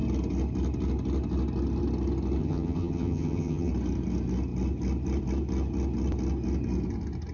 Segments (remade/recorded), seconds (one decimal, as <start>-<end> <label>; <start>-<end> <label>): 0.0-2.4 recorded; 2.4-3.7 remade; 3.7-7.3 recorded